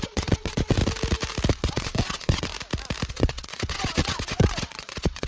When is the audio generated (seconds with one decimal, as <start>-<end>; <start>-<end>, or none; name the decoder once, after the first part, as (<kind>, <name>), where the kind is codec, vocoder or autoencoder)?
0.0-0.8 (vocoder, WaveNeXt); 1.5-2.5; 3.1-5.3